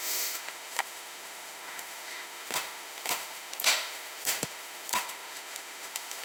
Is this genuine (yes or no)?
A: no